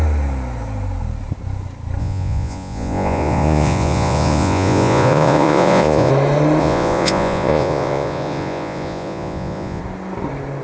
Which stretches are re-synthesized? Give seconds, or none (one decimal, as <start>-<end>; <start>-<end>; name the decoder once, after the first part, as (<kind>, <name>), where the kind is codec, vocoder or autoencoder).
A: 2.0-6.1 (vocoder, Vocos); 6.6-9.8